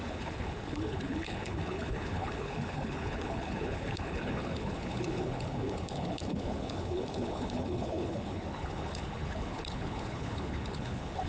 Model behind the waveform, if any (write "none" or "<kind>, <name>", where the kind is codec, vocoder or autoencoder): codec, HILCodec